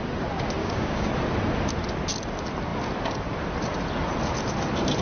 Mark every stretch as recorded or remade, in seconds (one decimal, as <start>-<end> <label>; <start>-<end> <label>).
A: 0.0-0.6 recorded; 0.6-1.1 remade; 1.1-5.0 recorded